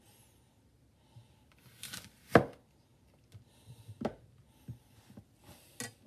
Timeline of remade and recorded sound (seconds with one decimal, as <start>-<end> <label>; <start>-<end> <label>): 0.0-6.1 recorded